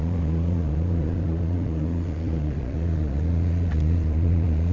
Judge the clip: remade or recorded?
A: remade